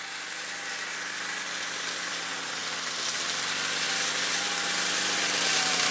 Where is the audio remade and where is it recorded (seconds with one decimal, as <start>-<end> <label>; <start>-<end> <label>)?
0.0-5.9 recorded